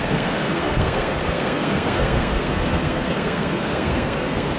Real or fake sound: fake